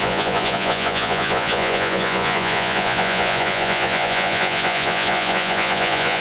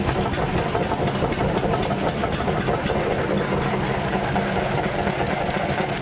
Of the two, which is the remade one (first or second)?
first